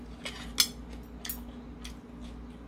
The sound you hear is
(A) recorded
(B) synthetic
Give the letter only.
A